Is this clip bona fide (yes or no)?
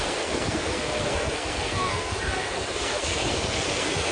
no